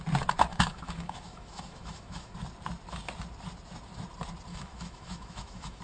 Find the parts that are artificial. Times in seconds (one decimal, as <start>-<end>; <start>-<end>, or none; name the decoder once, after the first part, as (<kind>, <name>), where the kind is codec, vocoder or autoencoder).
0.5-2.3 (autoencoder, DAC-VAE); 4.5-5.8